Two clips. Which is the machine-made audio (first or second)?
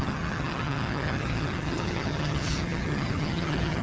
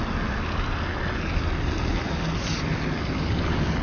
first